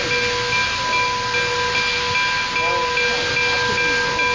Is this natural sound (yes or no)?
yes